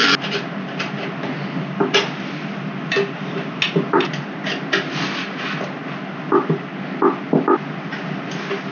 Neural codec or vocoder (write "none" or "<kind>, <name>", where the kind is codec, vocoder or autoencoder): none